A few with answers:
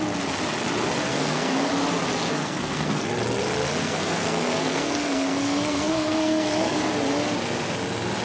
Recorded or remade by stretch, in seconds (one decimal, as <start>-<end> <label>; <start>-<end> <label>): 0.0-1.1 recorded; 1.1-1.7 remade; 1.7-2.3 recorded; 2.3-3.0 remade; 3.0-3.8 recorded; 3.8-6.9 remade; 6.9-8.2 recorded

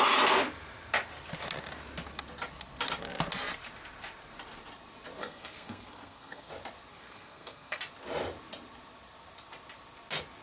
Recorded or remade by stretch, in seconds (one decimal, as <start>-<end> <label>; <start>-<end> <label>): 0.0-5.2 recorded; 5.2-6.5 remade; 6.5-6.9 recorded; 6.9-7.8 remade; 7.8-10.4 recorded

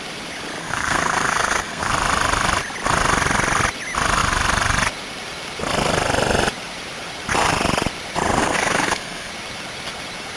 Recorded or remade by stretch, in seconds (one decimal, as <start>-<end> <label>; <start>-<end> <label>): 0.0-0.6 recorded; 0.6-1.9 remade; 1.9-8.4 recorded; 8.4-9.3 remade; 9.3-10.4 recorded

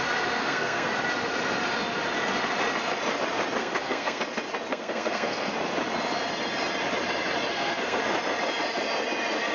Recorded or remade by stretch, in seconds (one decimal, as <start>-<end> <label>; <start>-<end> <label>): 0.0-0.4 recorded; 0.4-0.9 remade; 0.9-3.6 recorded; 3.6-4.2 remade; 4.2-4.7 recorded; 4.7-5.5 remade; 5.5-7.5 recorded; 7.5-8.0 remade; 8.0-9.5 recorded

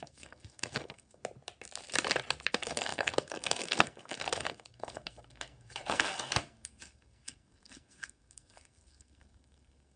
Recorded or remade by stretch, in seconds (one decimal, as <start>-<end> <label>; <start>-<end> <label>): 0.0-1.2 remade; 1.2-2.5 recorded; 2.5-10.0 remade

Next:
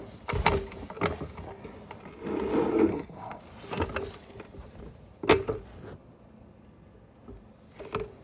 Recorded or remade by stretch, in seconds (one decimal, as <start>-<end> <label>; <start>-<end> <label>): 0.0-2.9 recorded; 2.9-3.4 remade; 3.4-8.2 recorded

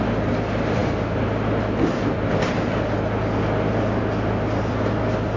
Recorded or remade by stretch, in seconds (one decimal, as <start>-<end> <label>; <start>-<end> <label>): 0.0-5.4 recorded